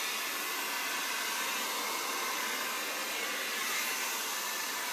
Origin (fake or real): real